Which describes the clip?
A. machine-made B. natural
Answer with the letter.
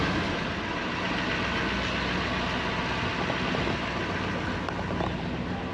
B